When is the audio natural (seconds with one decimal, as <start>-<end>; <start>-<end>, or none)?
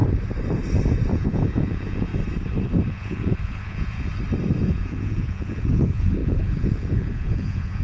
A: 0.0-1.1; 2.1-2.9; 4.1-4.6